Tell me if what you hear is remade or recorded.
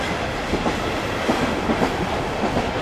recorded